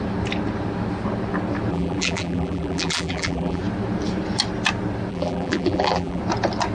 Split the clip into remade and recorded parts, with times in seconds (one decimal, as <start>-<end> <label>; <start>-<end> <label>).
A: 0.0-1.7 recorded; 1.7-3.6 remade; 3.6-5.1 recorded; 5.1-6.2 remade; 6.2-6.7 recorded